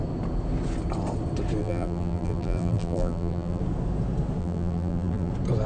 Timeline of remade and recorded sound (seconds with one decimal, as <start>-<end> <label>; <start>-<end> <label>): 0.0-1.6 recorded; 1.6-3.6 remade; 3.6-4.4 recorded; 4.4-5.3 remade; 5.3-5.7 recorded